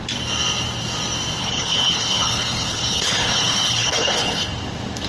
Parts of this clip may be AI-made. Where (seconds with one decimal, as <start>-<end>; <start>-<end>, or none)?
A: 1.4-4.5